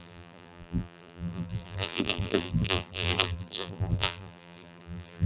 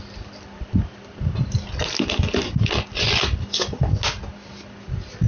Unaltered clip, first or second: second